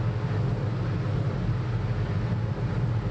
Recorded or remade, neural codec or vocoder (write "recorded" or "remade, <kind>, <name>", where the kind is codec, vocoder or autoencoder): recorded